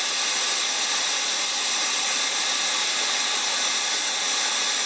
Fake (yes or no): no